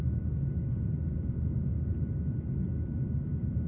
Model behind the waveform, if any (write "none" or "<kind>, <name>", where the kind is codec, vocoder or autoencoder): none